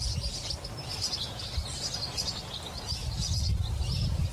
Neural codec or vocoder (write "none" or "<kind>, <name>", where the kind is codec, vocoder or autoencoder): none